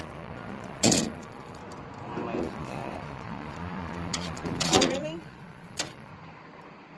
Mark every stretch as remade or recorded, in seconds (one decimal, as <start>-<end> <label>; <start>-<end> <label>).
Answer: 0.0-1.6 remade; 1.6-2.4 recorded; 2.4-6.1 remade; 6.1-7.0 recorded